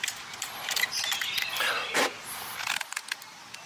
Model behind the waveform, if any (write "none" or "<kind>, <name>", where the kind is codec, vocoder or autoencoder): none